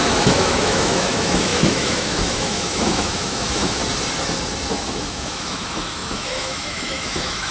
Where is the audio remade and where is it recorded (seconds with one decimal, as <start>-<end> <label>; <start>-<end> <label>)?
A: 0.0-3.8 remade; 3.8-4.7 recorded; 4.7-7.5 remade